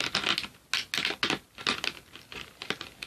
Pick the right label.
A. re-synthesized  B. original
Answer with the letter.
B